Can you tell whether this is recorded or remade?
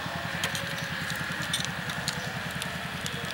recorded